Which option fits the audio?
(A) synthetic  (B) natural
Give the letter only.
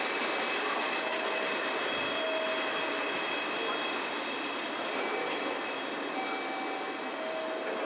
B